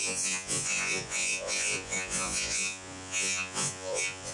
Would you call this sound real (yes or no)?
no